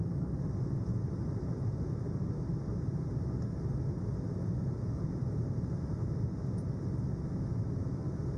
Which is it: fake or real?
real